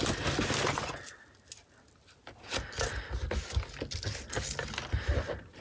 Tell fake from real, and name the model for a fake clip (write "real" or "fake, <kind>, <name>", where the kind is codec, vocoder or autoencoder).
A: real